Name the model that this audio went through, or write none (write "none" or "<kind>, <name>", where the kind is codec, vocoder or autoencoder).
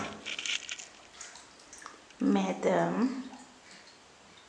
none